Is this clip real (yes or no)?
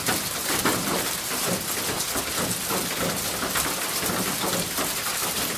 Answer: yes